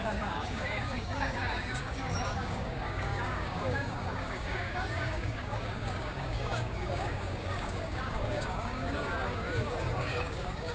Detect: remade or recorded remade